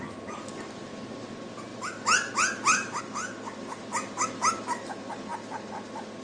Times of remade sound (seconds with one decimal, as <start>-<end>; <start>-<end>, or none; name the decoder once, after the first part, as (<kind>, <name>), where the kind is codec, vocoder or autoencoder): none